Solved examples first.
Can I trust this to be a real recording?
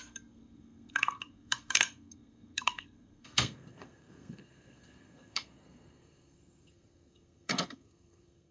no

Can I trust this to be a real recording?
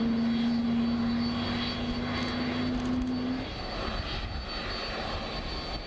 yes